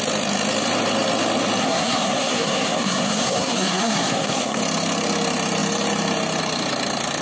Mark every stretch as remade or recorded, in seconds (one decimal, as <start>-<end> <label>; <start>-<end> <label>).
0.0-1.6 recorded; 1.6-4.6 remade; 4.6-7.2 recorded